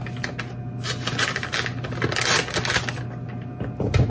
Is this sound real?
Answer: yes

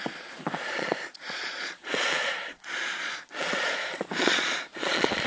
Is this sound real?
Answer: no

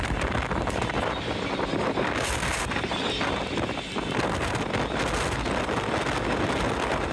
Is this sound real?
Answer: yes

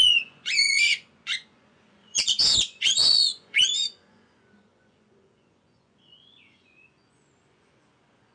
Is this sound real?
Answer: no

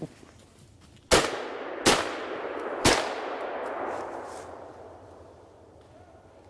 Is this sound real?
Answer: yes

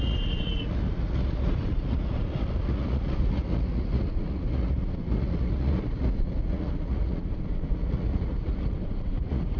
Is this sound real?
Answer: no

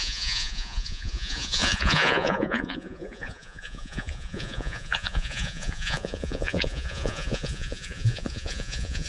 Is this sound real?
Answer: no